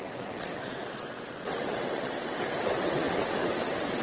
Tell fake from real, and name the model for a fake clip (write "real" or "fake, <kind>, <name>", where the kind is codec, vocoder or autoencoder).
fake, vocoder, WaveNeXt